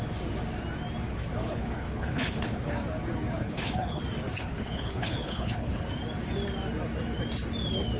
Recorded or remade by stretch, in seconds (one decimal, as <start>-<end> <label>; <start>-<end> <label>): 0.0-1.4 recorded; 1.4-2.7 remade; 2.7-3.4 recorded; 3.4-4.0 remade; 4.0-4.4 recorded; 4.4-5.8 remade; 5.8-8.0 recorded